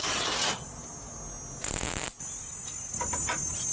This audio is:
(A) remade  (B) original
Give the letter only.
B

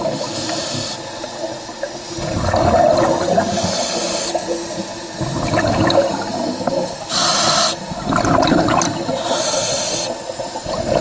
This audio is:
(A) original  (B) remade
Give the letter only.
A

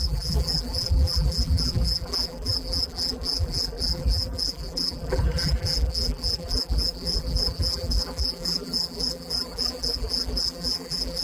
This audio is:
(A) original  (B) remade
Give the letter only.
B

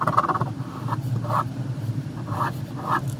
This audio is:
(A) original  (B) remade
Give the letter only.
B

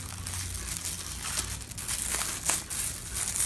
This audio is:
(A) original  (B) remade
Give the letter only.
A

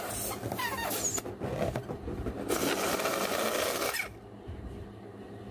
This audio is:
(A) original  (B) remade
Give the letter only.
A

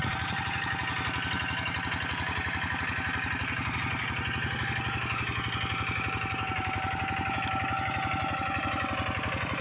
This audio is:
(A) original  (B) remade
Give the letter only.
A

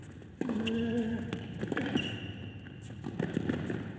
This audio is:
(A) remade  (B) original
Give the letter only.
B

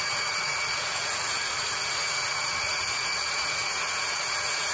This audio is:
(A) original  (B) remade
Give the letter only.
B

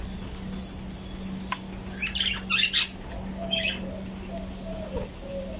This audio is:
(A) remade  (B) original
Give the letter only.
B